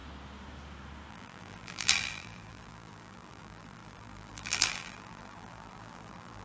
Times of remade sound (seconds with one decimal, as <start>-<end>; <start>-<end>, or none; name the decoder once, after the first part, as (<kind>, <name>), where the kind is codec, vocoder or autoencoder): 1.1-6.4 (vocoder, BigVGAN v2)